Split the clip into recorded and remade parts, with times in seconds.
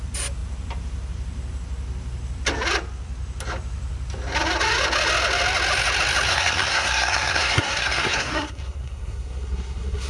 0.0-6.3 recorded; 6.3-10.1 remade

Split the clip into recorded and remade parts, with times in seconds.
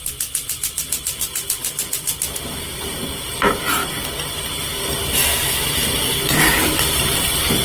0.0-7.6 recorded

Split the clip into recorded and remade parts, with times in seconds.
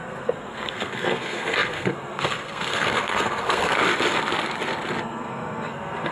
0.0-3.8 remade; 3.8-5.0 recorded; 5.0-6.1 remade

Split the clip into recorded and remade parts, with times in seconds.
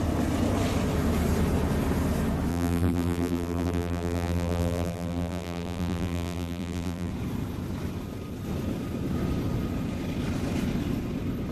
0.0-2.5 recorded; 2.5-7.1 remade; 7.1-11.5 recorded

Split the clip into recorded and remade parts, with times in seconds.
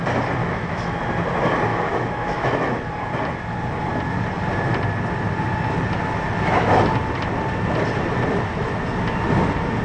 0.0-0.4 recorded; 0.4-1.0 remade; 1.0-1.7 recorded; 1.7-2.9 remade; 2.9-9.8 recorded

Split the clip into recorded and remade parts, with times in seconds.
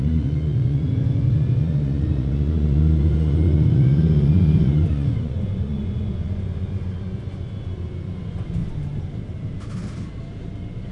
0.0-8.6 remade; 8.6-10.9 recorded